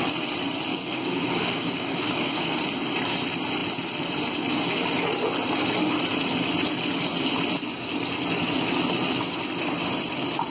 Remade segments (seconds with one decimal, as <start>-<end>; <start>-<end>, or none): 0.7-2.6